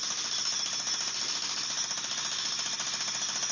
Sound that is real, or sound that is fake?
real